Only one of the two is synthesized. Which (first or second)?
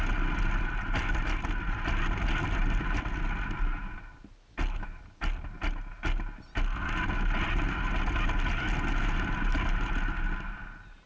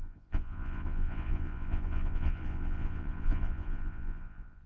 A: second